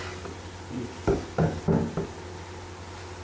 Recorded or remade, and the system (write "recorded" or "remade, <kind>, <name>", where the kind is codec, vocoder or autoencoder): recorded